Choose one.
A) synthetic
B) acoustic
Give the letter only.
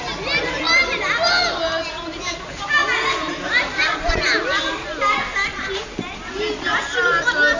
B